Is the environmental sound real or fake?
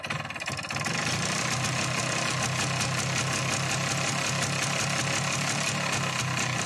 real